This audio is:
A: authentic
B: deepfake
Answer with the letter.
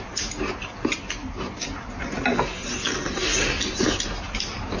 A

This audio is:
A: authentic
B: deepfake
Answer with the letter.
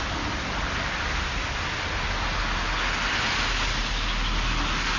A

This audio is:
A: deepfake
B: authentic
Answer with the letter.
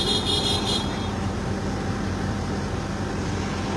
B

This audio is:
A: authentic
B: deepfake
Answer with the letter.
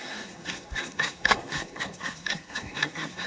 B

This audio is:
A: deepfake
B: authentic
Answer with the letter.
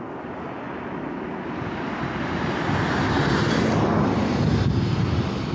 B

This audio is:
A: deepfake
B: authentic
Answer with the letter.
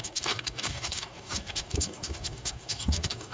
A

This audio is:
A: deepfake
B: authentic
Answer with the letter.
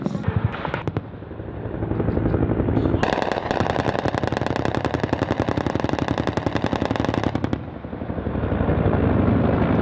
B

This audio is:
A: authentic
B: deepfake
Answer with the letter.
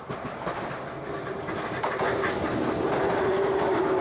A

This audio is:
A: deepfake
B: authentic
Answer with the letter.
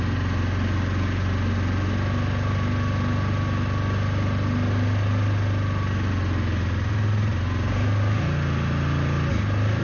B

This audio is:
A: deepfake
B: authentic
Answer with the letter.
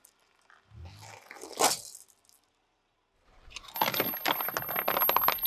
B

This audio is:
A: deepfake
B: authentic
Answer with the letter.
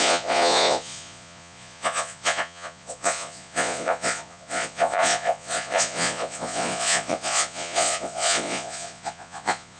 A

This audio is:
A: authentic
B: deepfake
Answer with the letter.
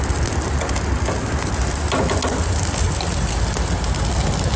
A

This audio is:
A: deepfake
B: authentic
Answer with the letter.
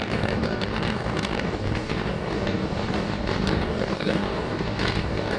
A